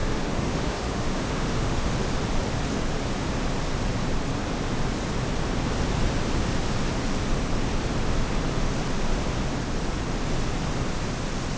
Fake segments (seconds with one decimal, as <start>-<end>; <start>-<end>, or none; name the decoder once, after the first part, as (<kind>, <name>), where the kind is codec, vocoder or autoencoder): 0.0-1.9 (autoencoder, DAC-VAE)